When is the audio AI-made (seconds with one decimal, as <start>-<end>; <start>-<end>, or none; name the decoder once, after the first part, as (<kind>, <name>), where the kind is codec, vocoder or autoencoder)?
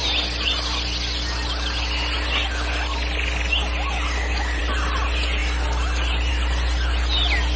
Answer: none